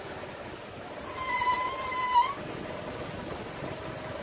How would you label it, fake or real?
fake